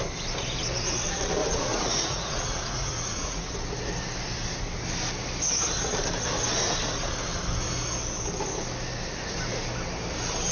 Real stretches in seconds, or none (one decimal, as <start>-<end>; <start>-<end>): 0.0-1.4; 3.5-10.5